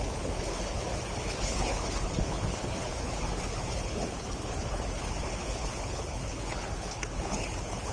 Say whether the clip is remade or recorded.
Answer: remade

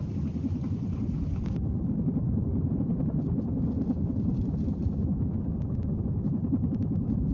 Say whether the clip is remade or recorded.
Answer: recorded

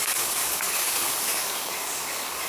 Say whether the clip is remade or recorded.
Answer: remade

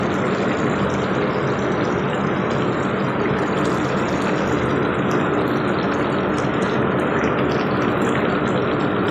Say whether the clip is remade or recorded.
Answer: recorded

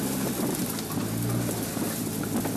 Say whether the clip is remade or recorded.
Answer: recorded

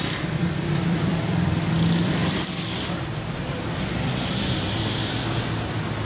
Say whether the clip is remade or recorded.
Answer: remade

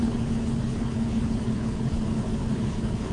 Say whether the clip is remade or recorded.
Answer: remade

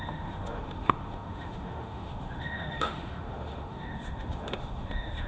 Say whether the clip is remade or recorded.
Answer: remade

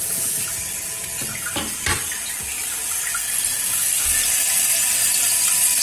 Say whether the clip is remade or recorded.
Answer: recorded